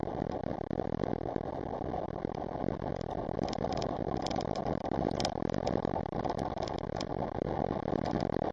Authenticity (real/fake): real